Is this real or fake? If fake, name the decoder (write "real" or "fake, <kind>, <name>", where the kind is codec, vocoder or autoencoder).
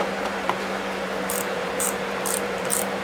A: fake, vocoder, BigVGAN v2